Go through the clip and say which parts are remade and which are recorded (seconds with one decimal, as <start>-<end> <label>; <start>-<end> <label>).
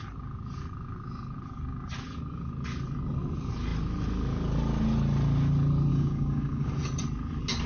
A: 0.0-5.9 recorded; 5.9-6.7 remade; 6.7-7.7 recorded